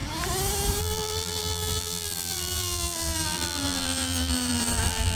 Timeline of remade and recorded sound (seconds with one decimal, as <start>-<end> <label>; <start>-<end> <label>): 0.0-0.8 recorded; 0.8-5.2 remade